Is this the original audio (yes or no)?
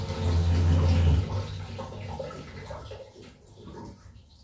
yes